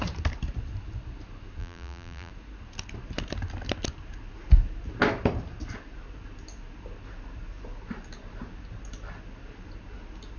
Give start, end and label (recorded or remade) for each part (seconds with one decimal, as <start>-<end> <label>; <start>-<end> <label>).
0.0-1.6 recorded; 1.6-2.3 remade; 2.3-10.4 recorded